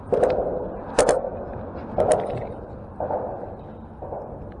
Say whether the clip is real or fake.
real